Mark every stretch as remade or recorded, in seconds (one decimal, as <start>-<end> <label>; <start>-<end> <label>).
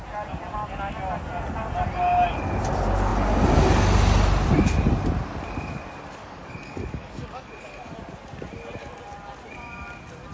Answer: 0.0-6.2 recorded; 6.2-7.9 remade; 7.9-10.3 recorded